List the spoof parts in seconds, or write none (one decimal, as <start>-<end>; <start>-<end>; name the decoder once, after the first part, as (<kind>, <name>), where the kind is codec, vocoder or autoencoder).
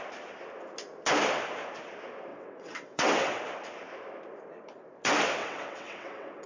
2.3-3.4 (vocoder, WaveNeXt); 5.4-6.5